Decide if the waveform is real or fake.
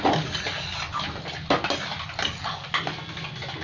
real